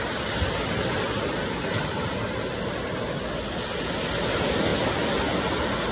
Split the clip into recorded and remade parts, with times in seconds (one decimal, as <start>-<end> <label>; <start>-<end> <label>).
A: 0.0-5.9 recorded